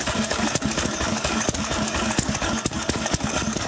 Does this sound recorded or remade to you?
remade